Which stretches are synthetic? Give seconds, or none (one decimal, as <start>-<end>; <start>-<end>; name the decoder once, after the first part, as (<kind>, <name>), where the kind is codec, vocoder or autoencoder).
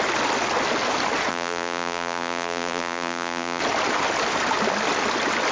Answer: 1.3-3.6 (vocoder, BigVGAN v2)